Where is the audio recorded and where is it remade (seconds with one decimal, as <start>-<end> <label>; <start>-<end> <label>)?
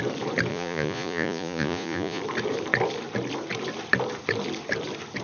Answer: 0.0-0.5 recorded; 0.5-2.2 remade; 2.2-5.2 recorded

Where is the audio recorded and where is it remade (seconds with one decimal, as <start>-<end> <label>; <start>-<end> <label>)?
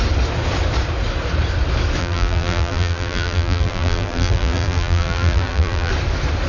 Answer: 0.0-2.0 recorded; 2.0-5.9 remade; 5.9-6.5 recorded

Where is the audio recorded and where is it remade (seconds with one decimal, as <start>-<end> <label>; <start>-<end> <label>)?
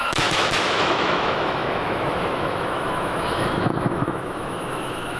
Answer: 0.0-5.2 remade